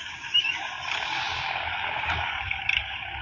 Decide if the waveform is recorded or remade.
remade